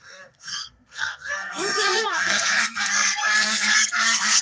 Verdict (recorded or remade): remade